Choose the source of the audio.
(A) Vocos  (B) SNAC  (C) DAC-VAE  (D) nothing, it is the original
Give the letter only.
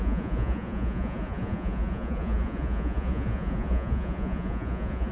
A